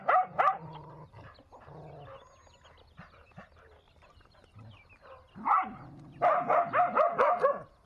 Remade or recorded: recorded